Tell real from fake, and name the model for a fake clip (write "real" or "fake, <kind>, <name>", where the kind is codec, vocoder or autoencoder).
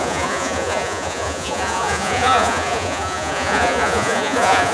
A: fake, vocoder, Vocos